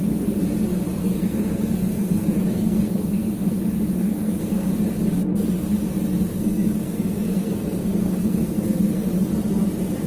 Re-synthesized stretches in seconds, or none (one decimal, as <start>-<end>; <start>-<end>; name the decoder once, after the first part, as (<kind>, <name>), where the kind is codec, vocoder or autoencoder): 1.0-3.6 (codec, SNAC); 4.0-4.7; 6.3-9.1